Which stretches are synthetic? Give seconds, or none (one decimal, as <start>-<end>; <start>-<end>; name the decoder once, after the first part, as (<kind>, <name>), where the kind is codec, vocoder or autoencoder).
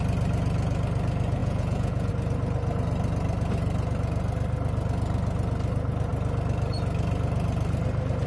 1.4-2.1 (vocoder, Vocos)